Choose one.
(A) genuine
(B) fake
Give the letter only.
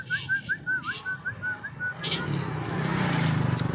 A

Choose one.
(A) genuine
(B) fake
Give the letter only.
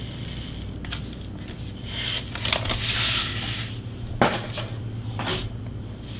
A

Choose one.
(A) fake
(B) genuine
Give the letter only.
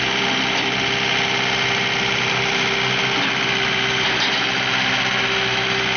B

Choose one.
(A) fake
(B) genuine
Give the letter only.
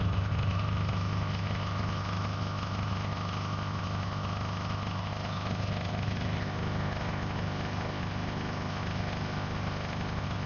A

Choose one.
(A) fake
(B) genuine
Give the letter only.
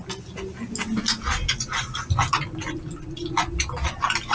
B